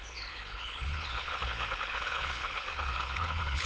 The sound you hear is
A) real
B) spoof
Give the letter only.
B